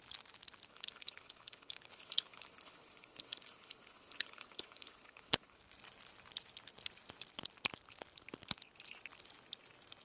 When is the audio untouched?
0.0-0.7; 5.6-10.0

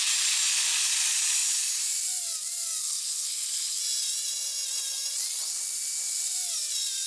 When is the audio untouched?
0.0-2.8; 3.8-7.1

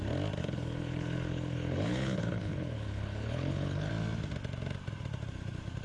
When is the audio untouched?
0.0-0.4; 3.9-5.8